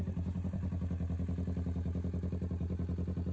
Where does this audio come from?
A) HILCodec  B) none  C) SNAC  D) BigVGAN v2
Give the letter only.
B